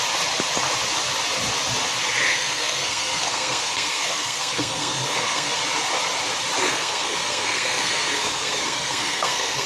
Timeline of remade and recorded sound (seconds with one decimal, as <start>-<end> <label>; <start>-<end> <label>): 0.0-2.3 recorded; 2.3-5.6 remade; 5.6-6.6 recorded; 6.6-9.7 remade